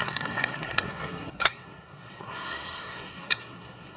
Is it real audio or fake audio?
fake